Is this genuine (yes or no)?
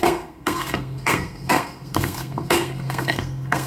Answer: no